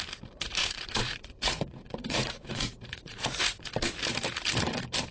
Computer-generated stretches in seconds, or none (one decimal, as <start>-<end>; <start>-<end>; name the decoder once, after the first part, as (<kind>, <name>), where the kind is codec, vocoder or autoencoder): 0.6-3.7 (vocoder, Vocos)